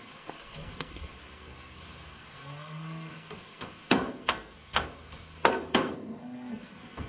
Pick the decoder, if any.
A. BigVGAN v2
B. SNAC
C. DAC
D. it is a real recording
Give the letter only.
B